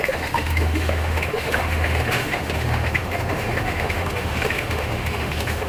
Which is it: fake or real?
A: fake